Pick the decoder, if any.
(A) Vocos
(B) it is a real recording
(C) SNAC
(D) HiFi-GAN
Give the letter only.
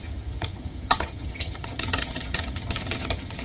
D